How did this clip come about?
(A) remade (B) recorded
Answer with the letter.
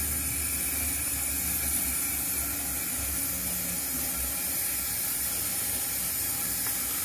B